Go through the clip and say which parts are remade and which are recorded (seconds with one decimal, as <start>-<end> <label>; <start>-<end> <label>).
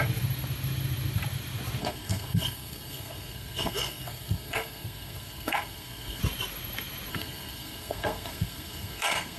0.0-1.8 recorded; 1.8-6.2 remade; 6.2-7.1 recorded; 7.1-9.4 remade